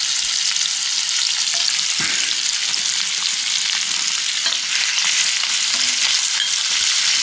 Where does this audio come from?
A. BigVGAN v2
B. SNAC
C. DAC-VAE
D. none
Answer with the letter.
D